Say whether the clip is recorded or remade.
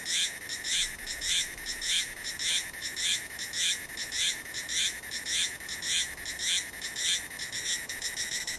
remade